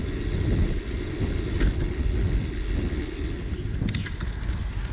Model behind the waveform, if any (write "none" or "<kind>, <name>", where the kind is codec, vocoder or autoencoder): none